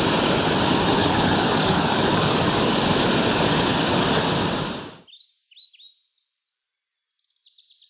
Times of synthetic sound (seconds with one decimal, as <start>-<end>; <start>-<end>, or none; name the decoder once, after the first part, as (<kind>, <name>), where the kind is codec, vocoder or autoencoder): 1.0-2.7 (codec, DAC)